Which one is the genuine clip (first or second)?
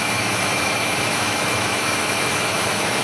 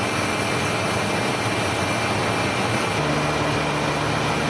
second